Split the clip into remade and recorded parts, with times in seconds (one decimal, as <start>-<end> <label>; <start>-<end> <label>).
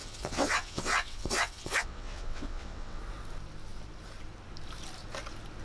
0.0-3.0 remade; 3.0-5.6 recorded